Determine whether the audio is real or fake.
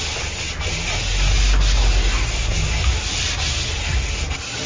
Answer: real